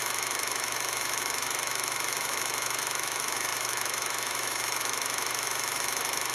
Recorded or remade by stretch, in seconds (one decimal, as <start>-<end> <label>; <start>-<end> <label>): 0.0-6.3 remade